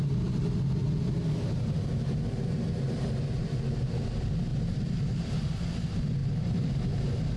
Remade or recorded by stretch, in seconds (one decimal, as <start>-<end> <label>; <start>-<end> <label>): 0.0-4.5 recorded; 4.5-5.3 remade; 5.3-6.2 recorded; 6.2-6.8 remade; 6.8-7.4 recorded